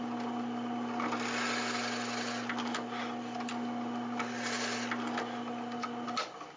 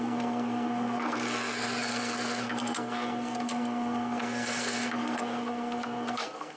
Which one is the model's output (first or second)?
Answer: second